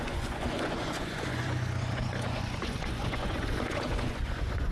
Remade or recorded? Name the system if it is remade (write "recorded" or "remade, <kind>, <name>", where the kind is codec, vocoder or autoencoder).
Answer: remade, vocoder, Vocos